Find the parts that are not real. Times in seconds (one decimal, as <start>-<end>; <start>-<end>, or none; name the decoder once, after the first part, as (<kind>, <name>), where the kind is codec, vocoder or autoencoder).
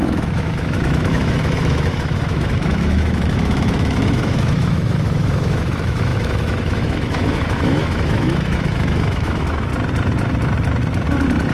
0.0-9.7 (autoencoder, DAC-VAE)